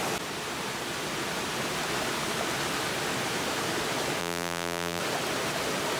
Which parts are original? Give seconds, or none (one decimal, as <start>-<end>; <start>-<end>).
0.0-4.2; 5.0-6.0